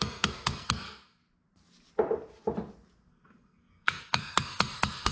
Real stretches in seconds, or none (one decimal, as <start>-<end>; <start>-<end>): 1.2-3.1

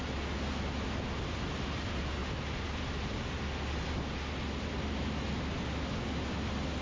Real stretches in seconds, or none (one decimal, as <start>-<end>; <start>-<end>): 0.0-6.8

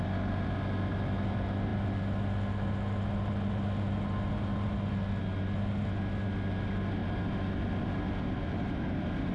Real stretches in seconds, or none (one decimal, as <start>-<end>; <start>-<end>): 0.0-9.3

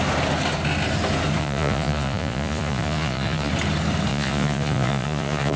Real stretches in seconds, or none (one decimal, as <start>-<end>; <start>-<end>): 0.0-1.4; 3.5-4.1

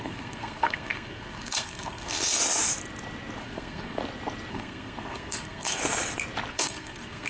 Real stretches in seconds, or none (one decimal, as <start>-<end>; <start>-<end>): 2.4-3.4; 4.0-4.5; 5.8-6.5

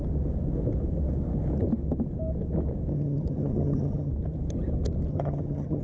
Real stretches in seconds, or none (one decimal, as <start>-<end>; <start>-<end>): 0.0-2.9; 4.1-5.1

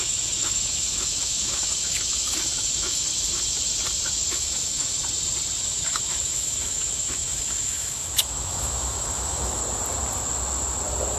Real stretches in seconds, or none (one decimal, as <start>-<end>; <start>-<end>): 3.1-4.3; 5.0-5.6; 9.6-11.2

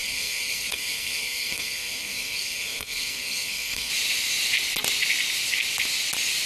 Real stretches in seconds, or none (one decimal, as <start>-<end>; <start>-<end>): 3.9-6.5